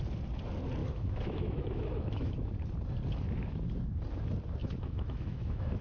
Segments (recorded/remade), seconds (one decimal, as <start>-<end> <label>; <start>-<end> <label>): 0.0-0.8 recorded; 0.8-2.5 remade; 2.5-4.6 recorded; 4.6-5.8 remade